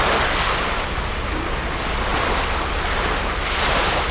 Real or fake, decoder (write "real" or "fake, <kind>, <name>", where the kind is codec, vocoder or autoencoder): real